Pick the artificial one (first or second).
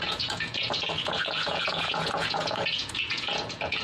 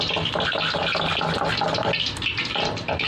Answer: first